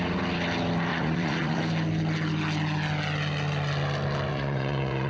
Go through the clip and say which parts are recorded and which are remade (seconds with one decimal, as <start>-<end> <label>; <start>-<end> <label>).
0.0-0.9 recorded; 0.9-1.6 remade; 1.6-4.3 recorded; 4.3-5.1 remade